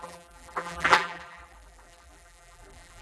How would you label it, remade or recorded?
remade